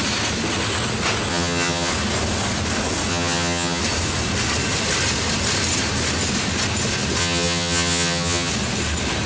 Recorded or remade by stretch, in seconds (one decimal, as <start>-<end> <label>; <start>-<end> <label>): 0.0-1.3 recorded; 1.3-1.9 remade; 1.9-3.1 recorded; 3.1-3.8 remade; 3.8-7.2 recorded; 7.2-8.5 remade; 8.5-9.3 recorded